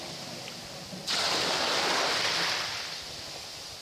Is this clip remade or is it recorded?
recorded